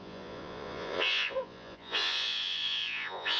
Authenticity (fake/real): fake